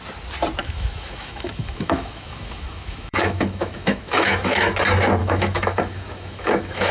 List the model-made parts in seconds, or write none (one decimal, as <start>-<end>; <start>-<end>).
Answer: 0.6-4.7; 5.2-6.9